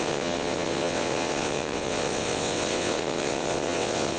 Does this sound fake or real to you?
fake